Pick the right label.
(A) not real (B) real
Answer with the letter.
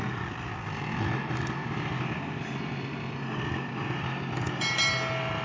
B